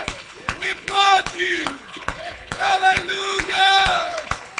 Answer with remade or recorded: remade